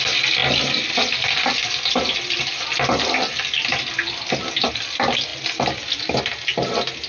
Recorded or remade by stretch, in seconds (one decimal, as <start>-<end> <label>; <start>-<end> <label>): 0.0-7.1 recorded